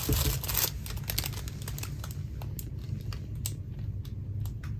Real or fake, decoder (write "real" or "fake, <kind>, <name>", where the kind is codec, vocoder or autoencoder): real